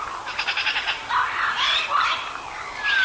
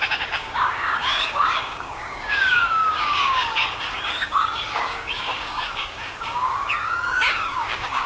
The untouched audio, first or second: first